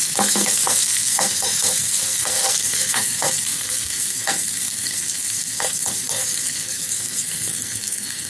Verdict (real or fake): fake